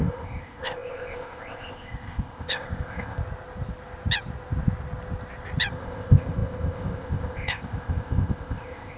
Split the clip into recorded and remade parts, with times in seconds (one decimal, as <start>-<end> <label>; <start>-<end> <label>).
0.0-3.2 remade; 3.2-5.7 recorded; 5.7-9.0 remade

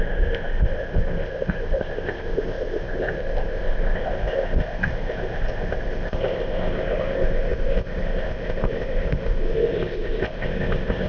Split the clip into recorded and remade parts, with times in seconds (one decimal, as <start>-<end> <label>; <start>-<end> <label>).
0.0-11.1 remade

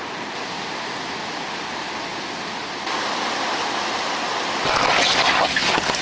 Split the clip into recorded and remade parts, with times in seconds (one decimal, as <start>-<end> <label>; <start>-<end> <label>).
0.0-6.0 recorded